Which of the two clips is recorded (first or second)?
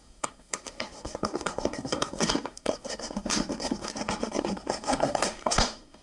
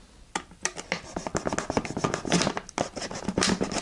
second